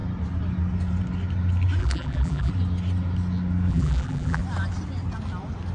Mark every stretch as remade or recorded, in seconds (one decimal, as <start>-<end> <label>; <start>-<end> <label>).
0.0-1.8 recorded; 1.8-2.5 remade; 2.5-3.7 recorded; 3.7-4.4 remade; 4.4-5.7 recorded

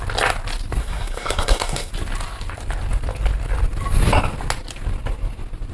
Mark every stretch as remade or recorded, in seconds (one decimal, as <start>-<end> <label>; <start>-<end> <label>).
0.0-0.8 recorded; 0.8-1.9 remade; 1.9-5.7 recorded